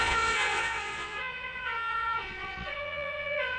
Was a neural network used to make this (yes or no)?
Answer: yes